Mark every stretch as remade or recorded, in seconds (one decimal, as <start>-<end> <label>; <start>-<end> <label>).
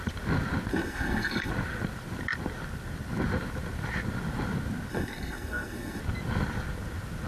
0.0-0.7 recorded; 0.7-1.5 remade; 1.5-4.9 recorded; 4.9-6.0 remade; 6.0-7.3 recorded